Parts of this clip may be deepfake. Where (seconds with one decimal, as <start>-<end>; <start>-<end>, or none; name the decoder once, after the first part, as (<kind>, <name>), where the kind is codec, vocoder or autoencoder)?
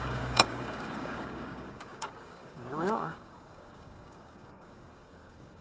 0.0-5.6 (codec, DAC)